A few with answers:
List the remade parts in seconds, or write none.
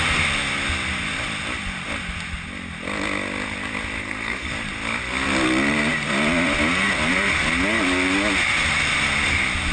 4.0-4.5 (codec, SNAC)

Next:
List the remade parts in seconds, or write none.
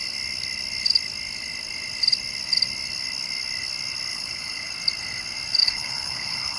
4.1-4.7 (codec, HILCodec); 5.6-6.6